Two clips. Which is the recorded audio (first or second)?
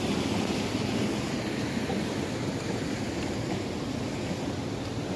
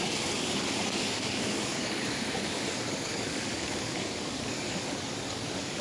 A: first